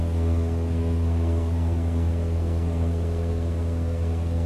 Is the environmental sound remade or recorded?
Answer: remade